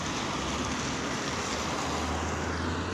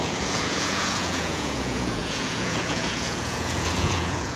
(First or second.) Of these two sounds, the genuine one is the first